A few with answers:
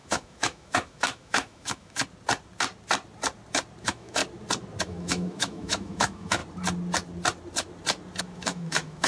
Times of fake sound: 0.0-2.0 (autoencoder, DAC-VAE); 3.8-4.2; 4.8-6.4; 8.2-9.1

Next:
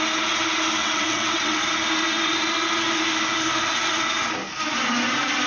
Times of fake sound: 0.8-1.6 (vocoder, WaveNeXt)

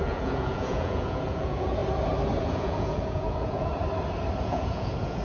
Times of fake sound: 0.0-1.8 (vocoder, Vocos); 2.4-3.7; 4.4-5.2

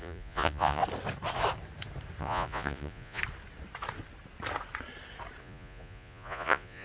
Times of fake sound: 0.0-0.8 (vocoder, Vocos); 2.2-3.2; 5.4-6.8